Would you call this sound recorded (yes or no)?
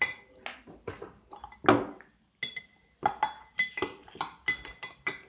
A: yes